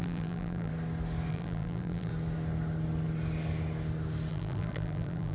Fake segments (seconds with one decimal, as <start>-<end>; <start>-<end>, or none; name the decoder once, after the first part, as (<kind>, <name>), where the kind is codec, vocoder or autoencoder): 0.0-0.7 (vocoder, BigVGAN v2); 1.3-2.1; 4.3-5.3

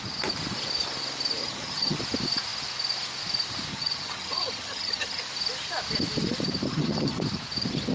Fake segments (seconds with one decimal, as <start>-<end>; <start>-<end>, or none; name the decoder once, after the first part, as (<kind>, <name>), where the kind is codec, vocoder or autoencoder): 1.4-2.0 (vocoder, HiFi-GAN); 3.7-5.2; 6.7-7.2

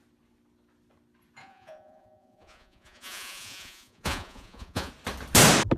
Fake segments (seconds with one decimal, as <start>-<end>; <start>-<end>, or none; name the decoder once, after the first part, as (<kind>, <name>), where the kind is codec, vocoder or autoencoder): 1.4-4.9 (vocoder, Vocos)

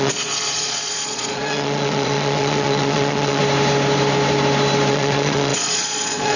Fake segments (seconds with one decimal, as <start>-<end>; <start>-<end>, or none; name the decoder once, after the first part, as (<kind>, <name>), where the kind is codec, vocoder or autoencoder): 0.0-3.4 (vocoder, Vocos); 4.9-6.4

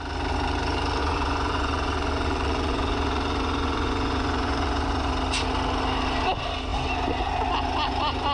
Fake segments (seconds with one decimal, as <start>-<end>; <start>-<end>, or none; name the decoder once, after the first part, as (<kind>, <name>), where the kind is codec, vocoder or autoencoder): 1.0-5.1 (vocoder, Vocos)

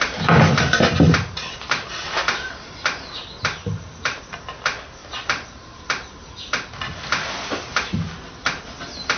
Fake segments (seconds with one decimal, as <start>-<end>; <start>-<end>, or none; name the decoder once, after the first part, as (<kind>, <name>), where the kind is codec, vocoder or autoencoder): 3.6-4.2 (vocoder, BigVGAN v2); 5.0-5.8